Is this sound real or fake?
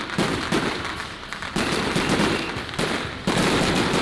real